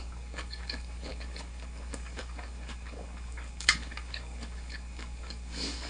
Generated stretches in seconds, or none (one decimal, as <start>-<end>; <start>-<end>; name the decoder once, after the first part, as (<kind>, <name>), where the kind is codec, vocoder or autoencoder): 0.0-5.9 (codec, DAC)